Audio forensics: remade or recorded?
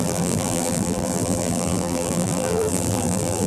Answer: remade